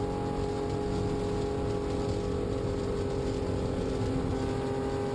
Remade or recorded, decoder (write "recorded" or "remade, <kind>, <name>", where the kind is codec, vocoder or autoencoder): recorded